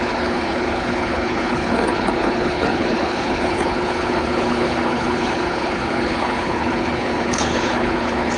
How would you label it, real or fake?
fake